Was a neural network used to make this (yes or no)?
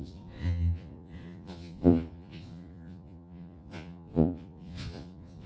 yes